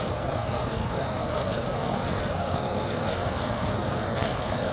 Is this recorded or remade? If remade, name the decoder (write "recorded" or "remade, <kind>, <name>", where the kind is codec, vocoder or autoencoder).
remade, codec, SNAC